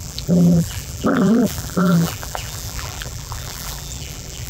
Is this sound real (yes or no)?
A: no